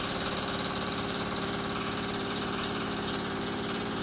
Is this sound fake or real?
fake